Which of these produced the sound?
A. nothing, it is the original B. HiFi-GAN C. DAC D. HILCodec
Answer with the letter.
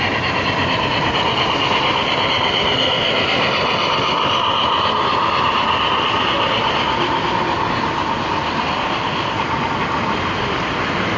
A